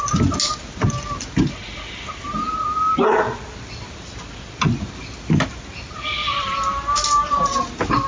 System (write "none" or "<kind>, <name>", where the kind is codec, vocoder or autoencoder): none